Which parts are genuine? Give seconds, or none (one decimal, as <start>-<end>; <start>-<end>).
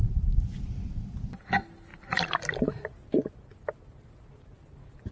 0.0-5.1